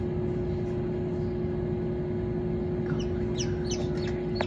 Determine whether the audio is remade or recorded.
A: recorded